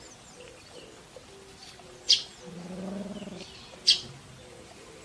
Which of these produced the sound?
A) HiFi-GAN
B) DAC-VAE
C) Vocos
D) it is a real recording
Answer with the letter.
D